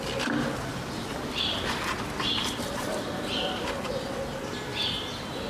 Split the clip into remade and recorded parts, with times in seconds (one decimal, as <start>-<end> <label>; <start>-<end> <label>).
0.0-0.7 recorded; 0.7-4.0 remade; 4.0-4.7 recorded; 4.7-5.5 remade